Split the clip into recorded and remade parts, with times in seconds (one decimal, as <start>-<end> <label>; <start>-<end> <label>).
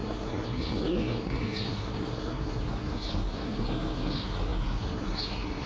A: 0.0-5.7 remade